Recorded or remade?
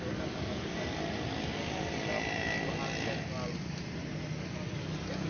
recorded